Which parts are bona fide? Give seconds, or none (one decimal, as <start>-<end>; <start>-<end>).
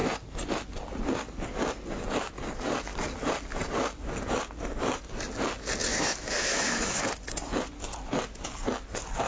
0.0-5.9; 7.0-9.3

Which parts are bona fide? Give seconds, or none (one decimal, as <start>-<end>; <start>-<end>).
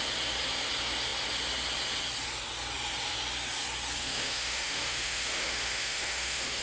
0.0-4.0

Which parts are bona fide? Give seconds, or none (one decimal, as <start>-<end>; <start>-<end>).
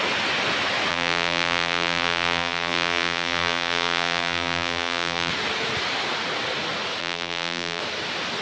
0.0-0.9; 5.3-7.0; 7.8-8.4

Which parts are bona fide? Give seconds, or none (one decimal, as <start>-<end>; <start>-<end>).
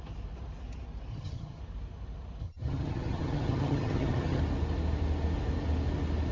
0.0-1.1; 1.6-2.4; 4.4-6.3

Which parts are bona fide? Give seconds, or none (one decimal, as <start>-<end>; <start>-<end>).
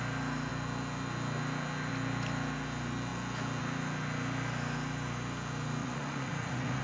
0.0-5.8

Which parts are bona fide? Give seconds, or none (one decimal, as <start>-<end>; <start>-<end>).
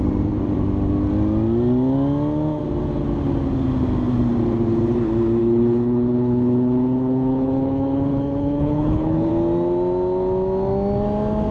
0.0-5.4; 9.3-11.5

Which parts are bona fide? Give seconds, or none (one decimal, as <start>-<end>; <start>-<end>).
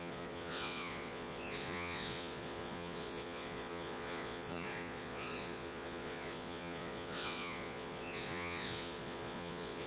none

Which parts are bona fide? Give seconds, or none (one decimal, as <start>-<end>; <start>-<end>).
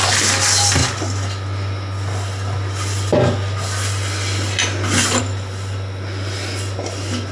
0.0-7.3